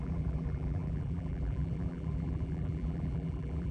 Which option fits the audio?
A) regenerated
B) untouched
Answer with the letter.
A